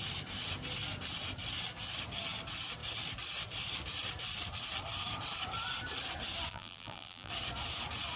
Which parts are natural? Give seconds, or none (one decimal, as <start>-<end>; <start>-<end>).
0.0-6.5; 7.3-8.2